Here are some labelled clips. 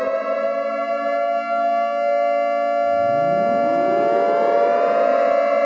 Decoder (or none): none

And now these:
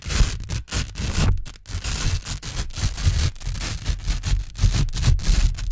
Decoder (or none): none